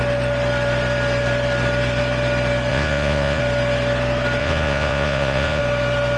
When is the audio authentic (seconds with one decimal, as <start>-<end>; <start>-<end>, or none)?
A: 0.0-2.7; 3.4-4.4; 5.6-6.2